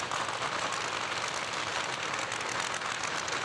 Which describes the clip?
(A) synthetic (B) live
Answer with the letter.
B